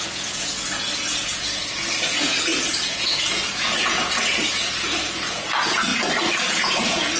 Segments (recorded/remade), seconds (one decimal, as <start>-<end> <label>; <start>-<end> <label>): 0.0-1.6 remade; 1.6-2.1 recorded; 2.1-5.9 remade; 5.9-6.4 recorded; 6.4-7.2 remade